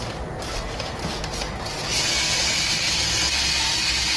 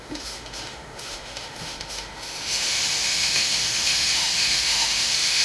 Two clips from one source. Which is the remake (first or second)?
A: second